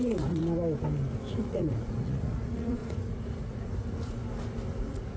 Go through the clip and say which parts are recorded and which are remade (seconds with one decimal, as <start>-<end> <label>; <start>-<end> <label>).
0.0-0.4 remade; 0.4-1.3 recorded; 1.3-4.2 remade; 4.2-4.8 recorded; 4.8-5.2 remade